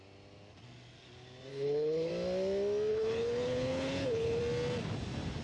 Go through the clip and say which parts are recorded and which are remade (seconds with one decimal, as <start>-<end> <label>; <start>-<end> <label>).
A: 0.0-1.5 recorded; 1.5-2.1 remade; 2.1-2.9 recorded; 2.9-4.4 remade; 4.4-5.4 recorded